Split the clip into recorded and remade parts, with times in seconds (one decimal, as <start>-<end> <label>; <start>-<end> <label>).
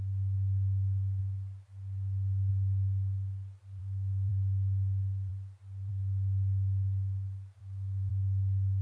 0.0-3.8 recorded; 3.8-4.3 remade; 4.3-7.6 recorded; 7.6-8.1 remade; 8.1-8.8 recorded